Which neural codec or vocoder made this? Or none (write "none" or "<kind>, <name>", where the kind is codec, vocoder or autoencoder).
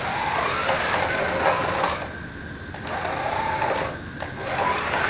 none